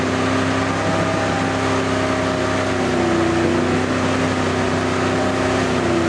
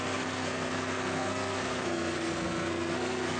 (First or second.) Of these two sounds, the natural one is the first